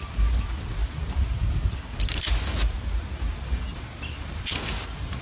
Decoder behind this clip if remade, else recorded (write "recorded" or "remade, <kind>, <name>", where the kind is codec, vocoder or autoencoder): recorded